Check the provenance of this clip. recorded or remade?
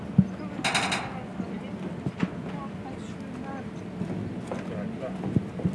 recorded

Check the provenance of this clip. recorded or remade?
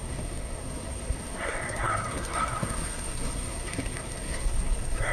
remade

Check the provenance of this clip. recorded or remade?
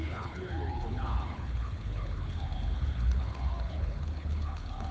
remade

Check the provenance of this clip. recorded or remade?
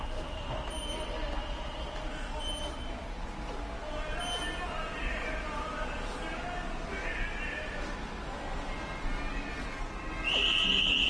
recorded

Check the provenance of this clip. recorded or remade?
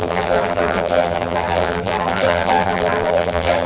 remade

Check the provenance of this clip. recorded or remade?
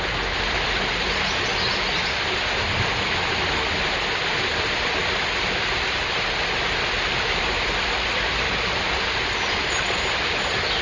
recorded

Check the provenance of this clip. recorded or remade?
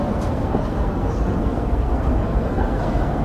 remade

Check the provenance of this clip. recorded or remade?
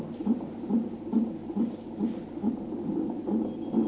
recorded